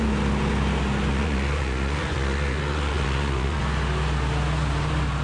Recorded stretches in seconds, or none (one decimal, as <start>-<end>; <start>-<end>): 0.0-1.1; 3.6-5.2

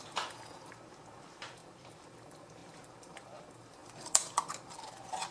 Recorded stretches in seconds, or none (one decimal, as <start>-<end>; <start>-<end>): none

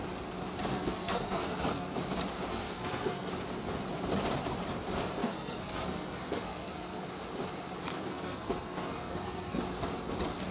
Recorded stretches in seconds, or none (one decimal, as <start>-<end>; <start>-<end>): 0.0-0.7; 2.0-2.5; 3.3-5.2; 7.0-7.9; 9.6-10.5

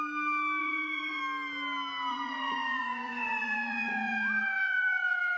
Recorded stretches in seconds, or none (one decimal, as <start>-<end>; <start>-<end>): 0.0-0.6; 1.2-2.1

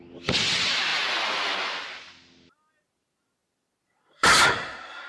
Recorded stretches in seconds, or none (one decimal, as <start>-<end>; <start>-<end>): 0.0-5.1